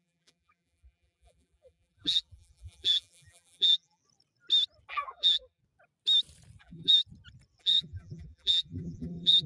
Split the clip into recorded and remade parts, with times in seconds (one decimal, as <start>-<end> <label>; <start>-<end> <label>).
0.0-4.0 remade; 4.0-4.9 recorded; 4.9-5.6 remade; 5.6-6.6 recorded; 6.6-7.0 remade; 7.0-7.6 recorded; 7.6-9.5 remade